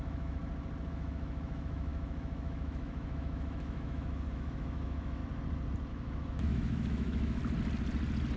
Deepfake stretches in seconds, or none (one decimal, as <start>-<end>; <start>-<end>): 0.0-0.4; 0.9-5.2; 5.9-7.4